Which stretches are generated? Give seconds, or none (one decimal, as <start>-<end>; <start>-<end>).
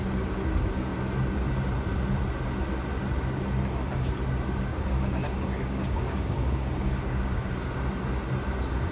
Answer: 4.7-7.5